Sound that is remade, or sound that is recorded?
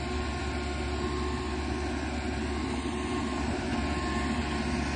recorded